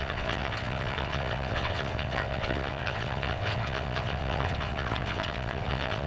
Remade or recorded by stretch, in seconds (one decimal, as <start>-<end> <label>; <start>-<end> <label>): 0.0-6.1 remade

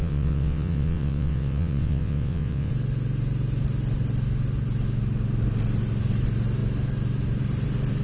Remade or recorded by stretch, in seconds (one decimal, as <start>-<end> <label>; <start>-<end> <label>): 0.0-2.7 remade; 2.7-8.0 recorded

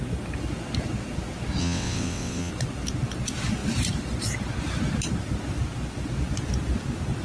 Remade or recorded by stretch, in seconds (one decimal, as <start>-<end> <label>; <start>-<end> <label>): 0.0-1.6 recorded; 1.6-2.5 remade; 2.5-7.2 recorded

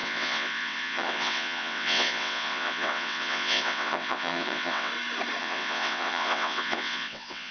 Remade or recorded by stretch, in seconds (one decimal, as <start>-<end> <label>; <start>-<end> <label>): 0.0-4.9 remade; 4.9-5.4 recorded; 5.4-7.5 remade

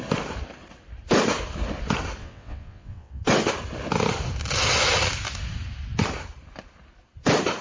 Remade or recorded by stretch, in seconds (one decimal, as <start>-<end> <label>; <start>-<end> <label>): 0.0-2.2 recorded; 2.2-3.2 remade; 3.2-7.6 recorded

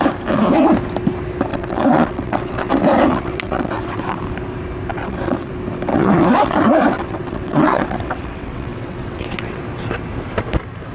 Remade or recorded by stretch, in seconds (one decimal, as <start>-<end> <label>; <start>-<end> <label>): 0.0-1.5 recorded; 1.5-2.7 remade; 2.7-3.1 recorded; 3.1-4.2 remade; 4.2-4.9 recorded; 4.9-5.5 remade; 5.5-5.9 recorded; 5.9-9.6 remade; 9.6-10.9 recorded

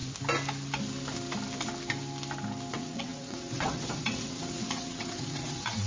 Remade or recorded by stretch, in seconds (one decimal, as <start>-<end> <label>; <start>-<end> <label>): 0.0-2.7 recorded; 2.7-5.9 remade

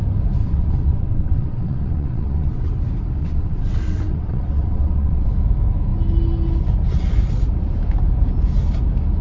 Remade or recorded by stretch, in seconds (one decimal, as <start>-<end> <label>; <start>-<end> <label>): 0.0-0.4 recorded; 0.4-2.7 remade; 2.7-3.2 recorded; 3.2-5.3 remade; 5.3-9.2 recorded